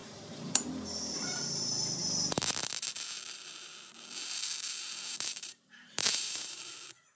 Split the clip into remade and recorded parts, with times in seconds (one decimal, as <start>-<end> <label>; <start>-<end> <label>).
0.0-0.6 remade; 0.6-5.3 recorded; 5.3-6.6 remade; 6.6-7.2 recorded